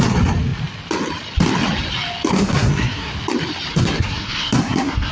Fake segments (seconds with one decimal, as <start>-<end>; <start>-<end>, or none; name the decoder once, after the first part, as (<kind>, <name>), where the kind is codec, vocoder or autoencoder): 2.3-3.1 (codec, SNAC); 3.7-5.1